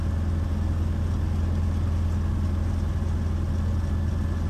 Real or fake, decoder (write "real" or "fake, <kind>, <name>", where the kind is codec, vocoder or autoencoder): real